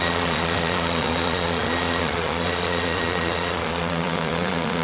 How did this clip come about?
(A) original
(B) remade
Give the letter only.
B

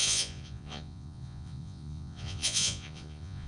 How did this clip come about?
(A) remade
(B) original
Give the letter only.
A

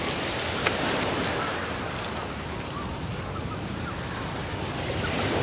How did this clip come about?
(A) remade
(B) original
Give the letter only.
B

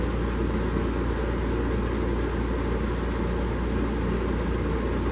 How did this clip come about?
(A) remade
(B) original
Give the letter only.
B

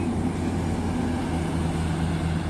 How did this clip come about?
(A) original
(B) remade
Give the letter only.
A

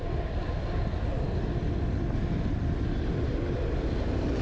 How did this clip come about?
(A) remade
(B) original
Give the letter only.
B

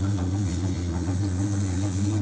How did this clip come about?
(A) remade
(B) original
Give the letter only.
A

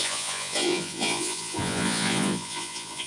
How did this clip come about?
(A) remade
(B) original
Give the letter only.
A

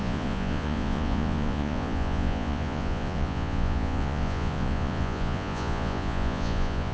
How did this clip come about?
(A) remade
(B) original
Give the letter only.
A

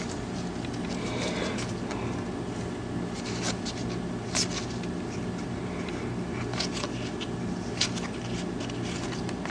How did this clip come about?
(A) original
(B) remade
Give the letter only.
A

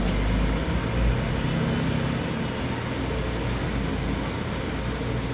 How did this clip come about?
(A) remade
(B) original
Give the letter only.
B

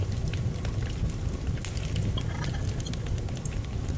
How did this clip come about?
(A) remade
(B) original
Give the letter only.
B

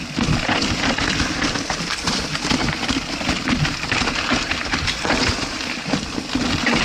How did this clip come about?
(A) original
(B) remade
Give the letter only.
A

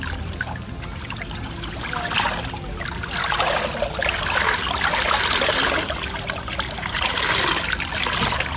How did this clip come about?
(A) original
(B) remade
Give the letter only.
A